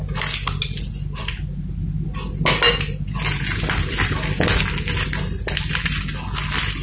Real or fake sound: real